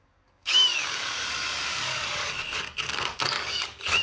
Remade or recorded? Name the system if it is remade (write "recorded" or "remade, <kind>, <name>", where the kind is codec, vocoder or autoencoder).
remade, codec, DAC